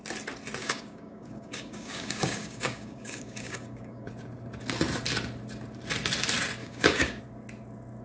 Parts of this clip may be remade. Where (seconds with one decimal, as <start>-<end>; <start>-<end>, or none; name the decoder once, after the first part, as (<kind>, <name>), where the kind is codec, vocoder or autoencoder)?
0.6-4.1 (codec, DAC); 6.6-7.2